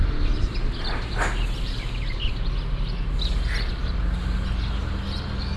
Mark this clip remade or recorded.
recorded